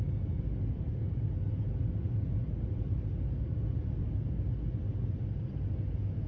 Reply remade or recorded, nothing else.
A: recorded